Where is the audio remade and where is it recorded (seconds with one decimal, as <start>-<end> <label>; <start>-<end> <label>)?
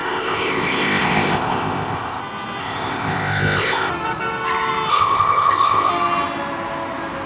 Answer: 0.0-2.2 remade; 2.2-2.6 recorded; 2.6-3.9 remade; 3.9-4.9 recorded; 4.9-5.9 remade; 5.9-7.3 recorded